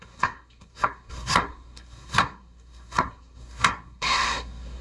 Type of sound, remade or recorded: remade